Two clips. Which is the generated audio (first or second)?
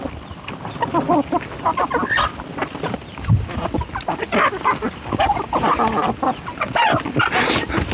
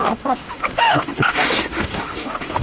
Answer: second